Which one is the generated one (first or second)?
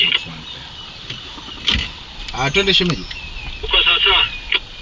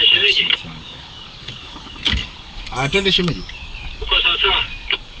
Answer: second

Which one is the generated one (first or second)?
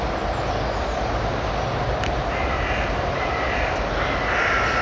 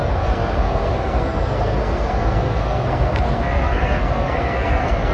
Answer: second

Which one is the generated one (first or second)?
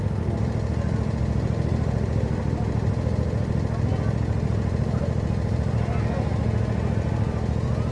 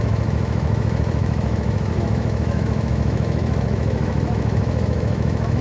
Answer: second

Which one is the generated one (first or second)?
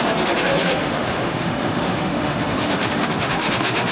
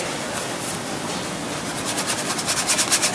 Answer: first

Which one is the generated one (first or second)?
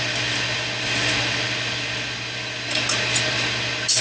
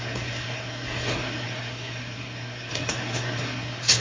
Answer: second